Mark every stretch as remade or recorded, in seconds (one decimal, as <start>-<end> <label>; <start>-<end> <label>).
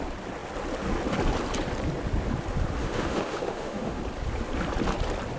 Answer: 0.0-2.8 recorded; 2.8-4.0 remade; 4.0-5.4 recorded